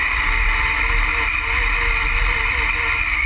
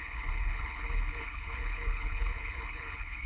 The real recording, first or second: first